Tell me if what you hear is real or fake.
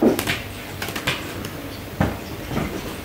real